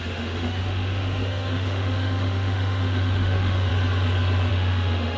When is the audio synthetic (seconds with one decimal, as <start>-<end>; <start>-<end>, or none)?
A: 0.0-3.7; 4.5-5.2